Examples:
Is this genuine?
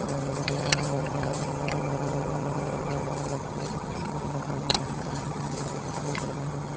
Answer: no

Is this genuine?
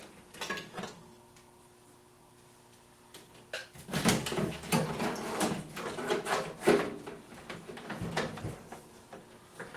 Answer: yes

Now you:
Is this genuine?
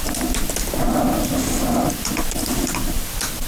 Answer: no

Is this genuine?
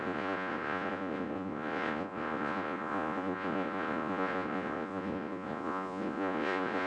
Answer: no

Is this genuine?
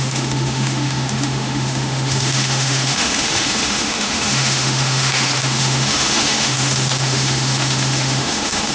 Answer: no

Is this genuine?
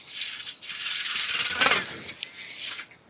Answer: yes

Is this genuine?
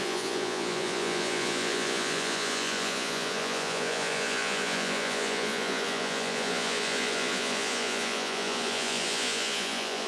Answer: no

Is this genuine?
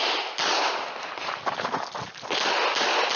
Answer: yes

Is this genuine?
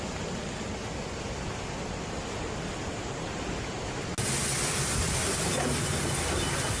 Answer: yes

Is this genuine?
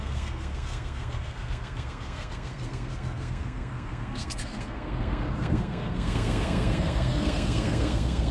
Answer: no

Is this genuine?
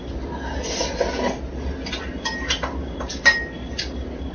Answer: yes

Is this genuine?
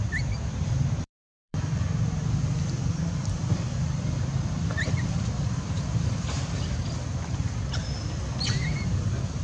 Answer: no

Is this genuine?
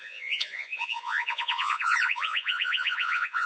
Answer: no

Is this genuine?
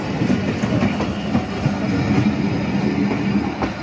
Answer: yes